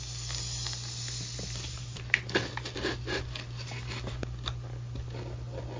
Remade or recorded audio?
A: recorded